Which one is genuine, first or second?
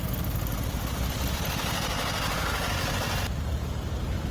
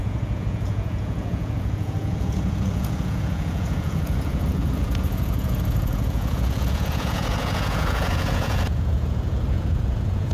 first